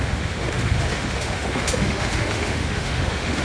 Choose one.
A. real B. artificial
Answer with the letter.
B